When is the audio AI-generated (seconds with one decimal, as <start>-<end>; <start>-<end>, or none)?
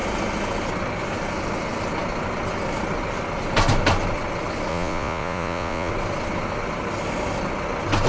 4.7-5.9